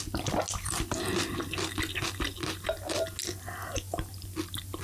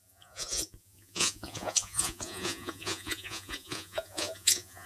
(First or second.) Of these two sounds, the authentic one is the first